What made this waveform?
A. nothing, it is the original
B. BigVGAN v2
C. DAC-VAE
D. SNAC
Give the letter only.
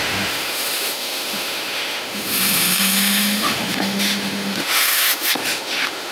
C